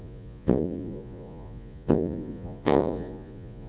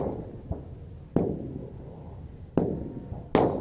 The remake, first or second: first